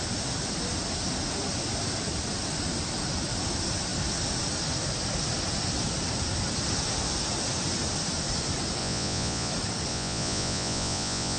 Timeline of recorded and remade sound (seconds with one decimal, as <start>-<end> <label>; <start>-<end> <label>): 0.0-8.8 recorded; 8.8-9.5 remade; 9.5-9.9 recorded; 9.9-11.4 remade